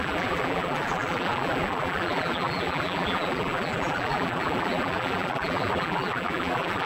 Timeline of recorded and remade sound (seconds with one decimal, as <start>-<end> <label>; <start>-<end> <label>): 0.0-6.9 remade